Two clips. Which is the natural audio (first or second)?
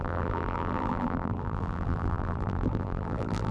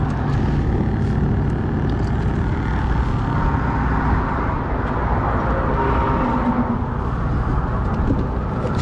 second